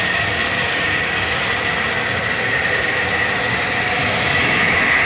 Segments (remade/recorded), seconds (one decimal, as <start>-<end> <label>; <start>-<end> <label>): 0.0-4.0 recorded; 4.0-5.0 remade